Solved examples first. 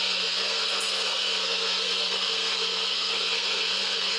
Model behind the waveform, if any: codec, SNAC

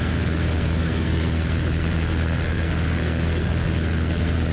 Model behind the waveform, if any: codec, SNAC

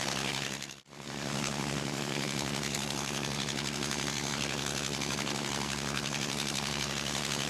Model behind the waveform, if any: codec, SNAC